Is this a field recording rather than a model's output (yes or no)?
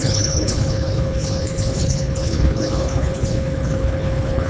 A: no